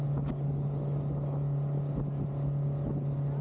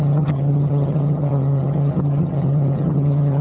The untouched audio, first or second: first